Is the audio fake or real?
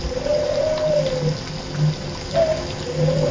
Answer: real